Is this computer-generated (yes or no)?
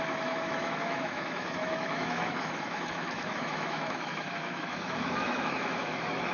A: yes